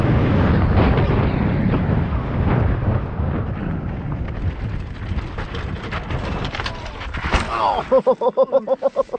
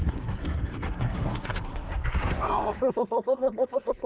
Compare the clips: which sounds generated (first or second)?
second